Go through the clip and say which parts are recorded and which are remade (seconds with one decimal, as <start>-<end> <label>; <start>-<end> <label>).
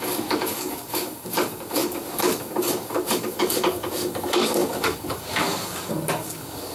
0.0-6.7 remade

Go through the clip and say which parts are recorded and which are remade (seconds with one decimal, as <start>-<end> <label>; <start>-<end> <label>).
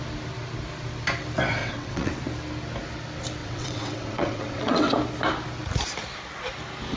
0.0-1.6 recorded; 1.6-2.2 remade; 2.2-3.4 recorded; 3.4-4.9 remade; 4.9-7.0 recorded